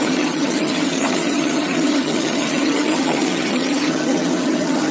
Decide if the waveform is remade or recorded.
remade